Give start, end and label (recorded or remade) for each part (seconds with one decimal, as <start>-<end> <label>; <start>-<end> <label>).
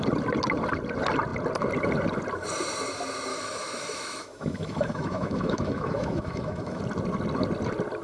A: 0.0-3.3 recorded; 3.3-6.8 remade; 6.8-8.0 recorded